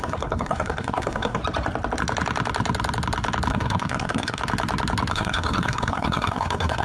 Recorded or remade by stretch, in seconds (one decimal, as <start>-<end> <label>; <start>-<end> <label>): 0.0-1.4 remade; 1.4-3.5 recorded; 3.5-4.4 remade; 4.4-5.1 recorded; 5.1-6.8 remade